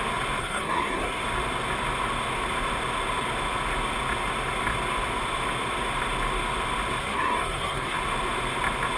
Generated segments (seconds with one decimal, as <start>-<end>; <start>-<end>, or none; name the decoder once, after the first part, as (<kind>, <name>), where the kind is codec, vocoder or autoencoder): 0.4-1.2 (codec, SNAC); 7.0-8.0